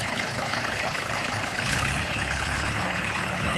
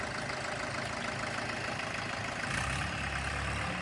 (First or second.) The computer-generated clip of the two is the first